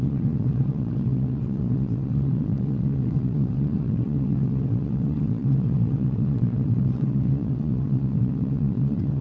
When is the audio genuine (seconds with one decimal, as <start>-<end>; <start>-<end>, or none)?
none